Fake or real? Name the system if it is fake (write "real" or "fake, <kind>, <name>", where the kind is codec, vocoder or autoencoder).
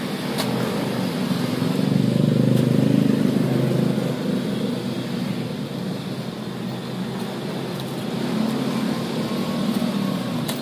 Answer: real